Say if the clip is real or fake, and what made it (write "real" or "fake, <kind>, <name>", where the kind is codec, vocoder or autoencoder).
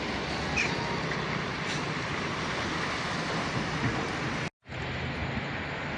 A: real